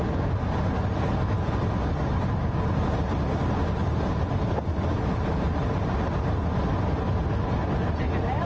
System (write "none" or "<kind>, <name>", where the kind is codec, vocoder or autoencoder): none